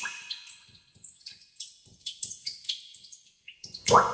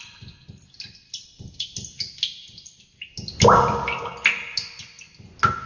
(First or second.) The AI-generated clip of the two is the first